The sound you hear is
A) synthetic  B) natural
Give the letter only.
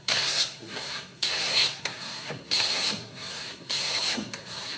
A